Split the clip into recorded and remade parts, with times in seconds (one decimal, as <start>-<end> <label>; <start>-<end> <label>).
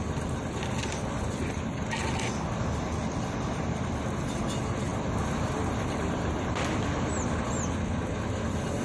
0.0-4.9 recorded; 4.9-5.9 remade; 5.9-8.8 recorded